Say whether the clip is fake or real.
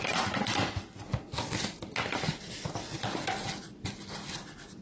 real